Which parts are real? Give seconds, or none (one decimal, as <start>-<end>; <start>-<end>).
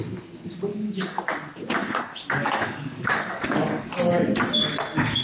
0.0-0.7; 1.2-1.8; 3.9-5.2